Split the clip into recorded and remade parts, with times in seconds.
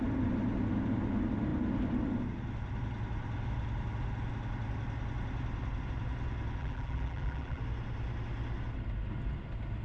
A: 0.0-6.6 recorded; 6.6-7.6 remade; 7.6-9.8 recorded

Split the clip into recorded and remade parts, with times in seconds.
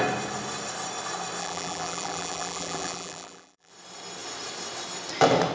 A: 0.0-1.4 recorded; 1.4-3.7 remade; 3.7-5.5 recorded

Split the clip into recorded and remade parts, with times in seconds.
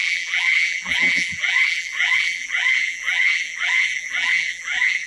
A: 0.0-5.1 remade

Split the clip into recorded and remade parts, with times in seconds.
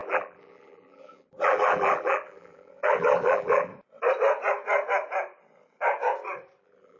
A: 0.0-3.7 remade; 3.7-6.6 recorded; 6.6-7.0 remade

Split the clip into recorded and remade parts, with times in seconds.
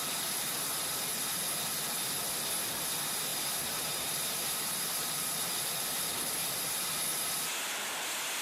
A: 0.0-0.7 remade; 0.7-3.3 recorded; 3.3-6.8 remade; 6.8-8.4 recorded